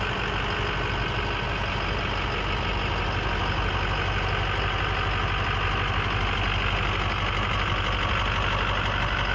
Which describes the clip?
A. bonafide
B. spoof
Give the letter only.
A